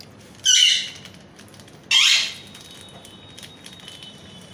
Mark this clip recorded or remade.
recorded